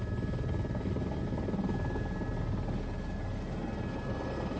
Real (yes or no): yes